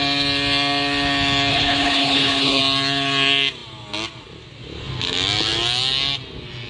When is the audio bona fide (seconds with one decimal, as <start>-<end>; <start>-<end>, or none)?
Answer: 0.0-1.5; 2.6-6.7